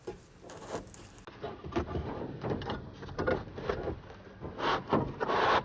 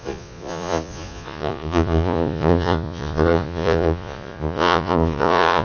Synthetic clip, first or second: second